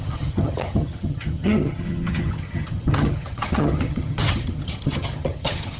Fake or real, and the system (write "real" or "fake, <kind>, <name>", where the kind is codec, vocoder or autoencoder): fake, vocoder, HiFi-GAN